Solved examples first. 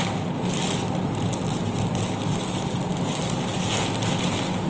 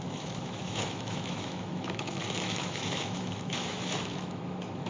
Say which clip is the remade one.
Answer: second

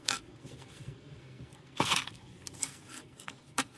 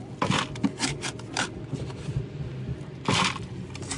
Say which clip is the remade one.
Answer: first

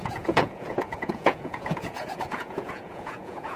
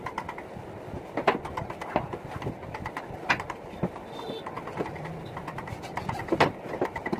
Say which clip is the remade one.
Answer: first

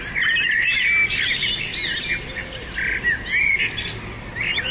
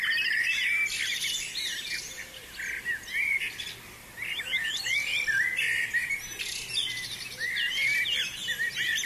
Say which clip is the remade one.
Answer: second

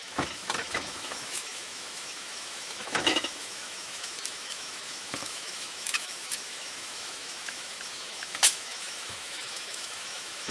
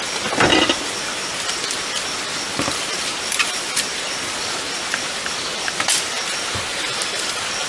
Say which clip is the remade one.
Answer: first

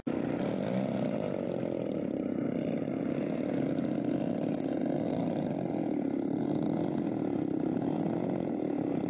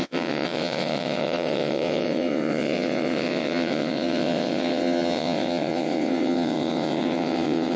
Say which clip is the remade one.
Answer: second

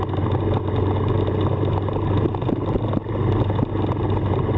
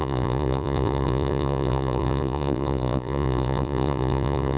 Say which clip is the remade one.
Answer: second